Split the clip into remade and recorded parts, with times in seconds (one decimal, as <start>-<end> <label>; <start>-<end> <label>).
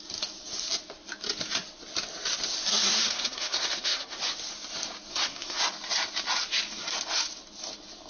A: 0.0-2.7 recorded; 2.7-4.2 remade; 4.2-5.1 recorded; 5.1-5.6 remade; 5.6-8.1 recorded